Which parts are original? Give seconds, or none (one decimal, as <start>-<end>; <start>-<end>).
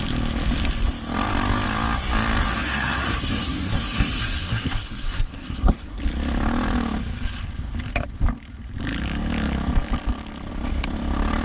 0.0-2.4; 6.0-11.4